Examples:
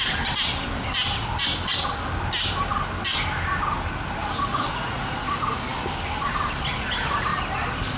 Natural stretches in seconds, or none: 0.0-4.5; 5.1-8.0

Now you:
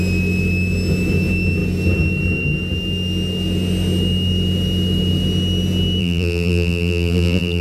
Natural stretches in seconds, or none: 0.0-6.0

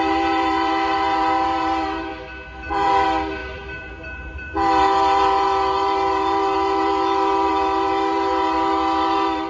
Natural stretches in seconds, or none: 2.1-2.7

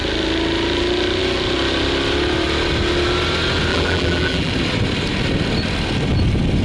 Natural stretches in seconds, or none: 0.0-3.7; 4.5-6.6

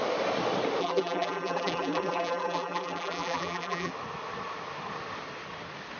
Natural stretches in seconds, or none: 0.0-0.8; 3.9-6.0

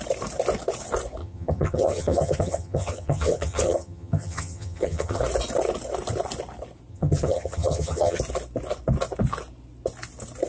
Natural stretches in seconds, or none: 0.0-1.2; 5.2-6.9; 8.2-10.5

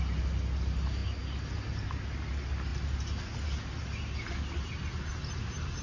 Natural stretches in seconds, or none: 0.0-5.8

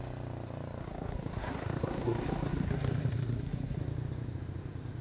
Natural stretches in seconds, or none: 0.0-0.8; 3.8-5.0